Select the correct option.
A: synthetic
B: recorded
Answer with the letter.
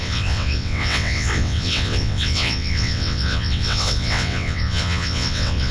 A